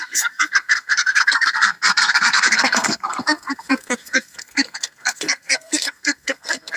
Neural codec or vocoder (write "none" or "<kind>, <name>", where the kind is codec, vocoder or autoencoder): codec, SNAC